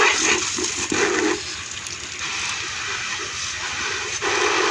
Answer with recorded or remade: recorded